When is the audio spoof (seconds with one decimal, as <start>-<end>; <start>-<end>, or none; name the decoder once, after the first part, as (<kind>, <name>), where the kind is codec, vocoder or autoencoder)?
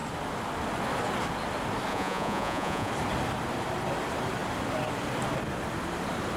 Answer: 1.9-2.9 (vocoder, Vocos)